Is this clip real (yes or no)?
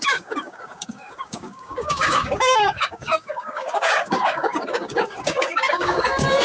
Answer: no